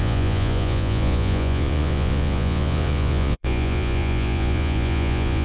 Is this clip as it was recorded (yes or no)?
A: no